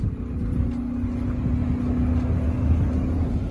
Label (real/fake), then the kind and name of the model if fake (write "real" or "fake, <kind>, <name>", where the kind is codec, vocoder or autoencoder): real